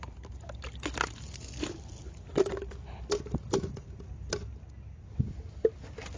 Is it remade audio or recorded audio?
recorded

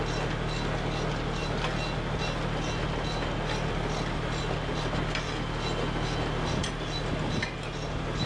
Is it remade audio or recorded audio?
recorded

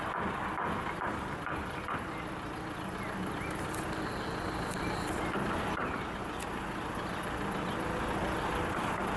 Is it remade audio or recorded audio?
recorded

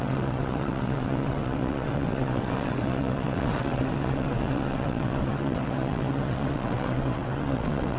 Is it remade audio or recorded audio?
remade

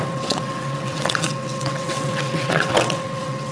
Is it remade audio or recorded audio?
remade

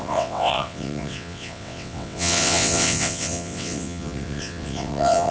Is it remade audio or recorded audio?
remade